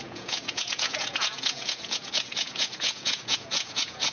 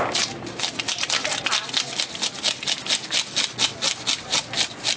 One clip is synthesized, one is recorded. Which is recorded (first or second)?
second